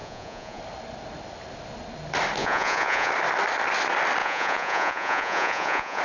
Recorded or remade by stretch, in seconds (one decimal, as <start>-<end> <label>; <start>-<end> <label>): 0.0-0.6 remade; 0.6-2.4 recorded; 2.4-3.1 remade; 3.1-4.2 recorded; 4.2-6.0 remade